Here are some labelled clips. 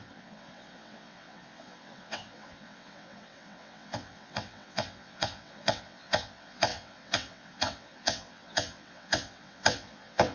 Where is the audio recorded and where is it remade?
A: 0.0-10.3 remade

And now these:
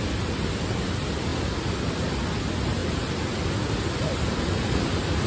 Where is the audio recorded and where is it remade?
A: 0.0-5.3 recorded

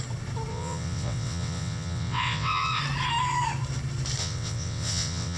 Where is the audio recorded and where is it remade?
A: 0.0-0.5 recorded; 0.5-2.8 remade; 2.8-4.2 recorded; 4.2-5.4 remade

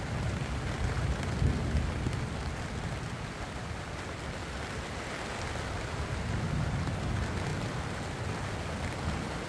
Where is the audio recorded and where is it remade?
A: 0.0-9.5 recorded

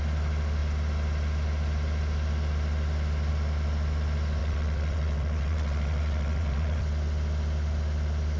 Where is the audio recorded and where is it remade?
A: 0.0-4.4 recorded; 4.4-6.8 remade; 6.8-8.4 recorded